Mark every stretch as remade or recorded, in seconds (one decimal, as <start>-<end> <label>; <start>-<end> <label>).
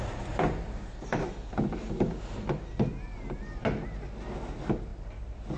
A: 0.0-5.6 recorded